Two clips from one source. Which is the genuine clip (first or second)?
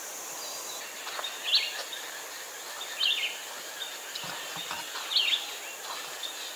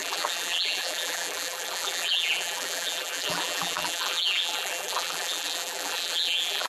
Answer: first